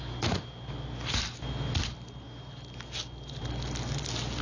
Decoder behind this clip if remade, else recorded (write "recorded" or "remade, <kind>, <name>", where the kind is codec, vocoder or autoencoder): recorded